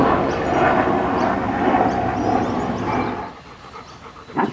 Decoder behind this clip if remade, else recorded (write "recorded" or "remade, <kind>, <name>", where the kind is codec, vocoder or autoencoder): recorded